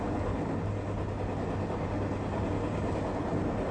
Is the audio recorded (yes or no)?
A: yes